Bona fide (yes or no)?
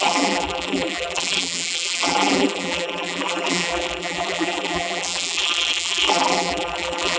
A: no